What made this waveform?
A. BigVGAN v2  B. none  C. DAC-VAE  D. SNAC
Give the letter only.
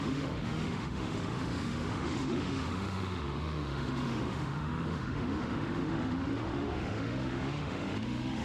C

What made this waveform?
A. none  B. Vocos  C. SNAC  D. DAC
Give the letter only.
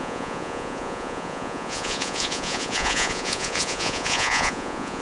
B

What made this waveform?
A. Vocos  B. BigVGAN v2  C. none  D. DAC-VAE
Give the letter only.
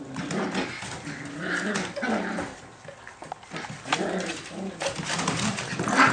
C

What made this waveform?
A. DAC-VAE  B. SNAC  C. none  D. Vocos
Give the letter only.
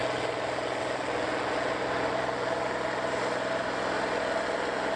C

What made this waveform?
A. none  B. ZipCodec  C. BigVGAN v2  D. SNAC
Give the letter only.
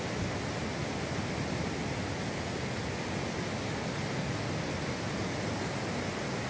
A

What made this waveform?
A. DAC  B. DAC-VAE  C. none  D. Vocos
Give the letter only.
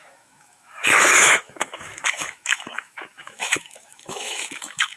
B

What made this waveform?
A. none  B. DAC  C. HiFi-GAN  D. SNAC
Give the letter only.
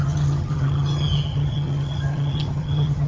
C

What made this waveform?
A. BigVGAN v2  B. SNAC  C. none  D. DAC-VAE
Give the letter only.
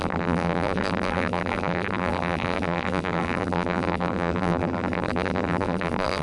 A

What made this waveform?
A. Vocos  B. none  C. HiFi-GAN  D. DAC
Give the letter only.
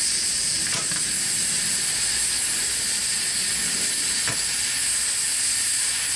B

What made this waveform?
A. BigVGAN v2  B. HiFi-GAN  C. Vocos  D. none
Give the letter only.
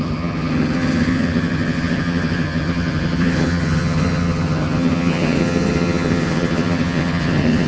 B